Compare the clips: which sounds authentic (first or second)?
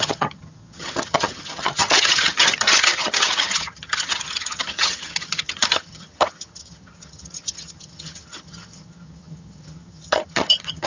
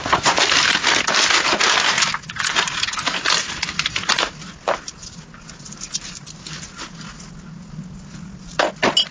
second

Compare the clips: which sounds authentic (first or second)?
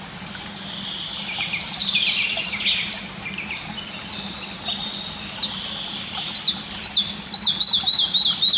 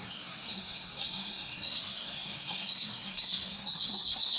first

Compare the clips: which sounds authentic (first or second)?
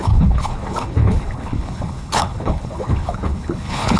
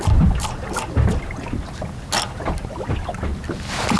second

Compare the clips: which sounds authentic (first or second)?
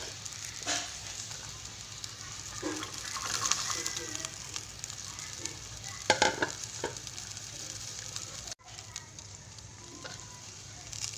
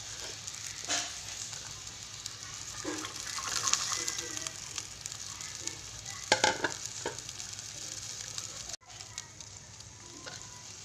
second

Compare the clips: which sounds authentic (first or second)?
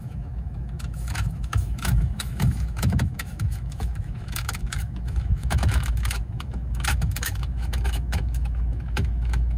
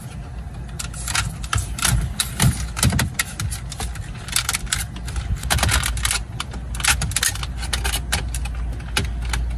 second